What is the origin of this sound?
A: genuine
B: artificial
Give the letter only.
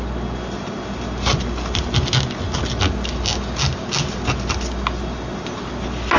A